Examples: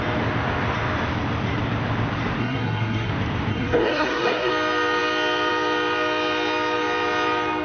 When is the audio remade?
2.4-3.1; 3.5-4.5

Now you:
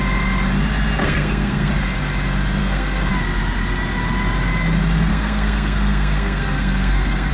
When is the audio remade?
1.0-1.7; 2.6-3.1; 5.1-7.3

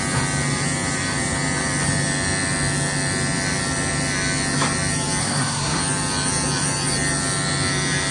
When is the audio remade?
5.2-5.8

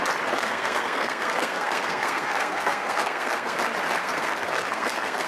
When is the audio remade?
0.4-3.6; 4.0-5.3

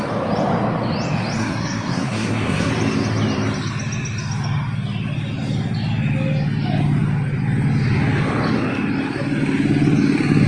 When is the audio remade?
1.4-2.7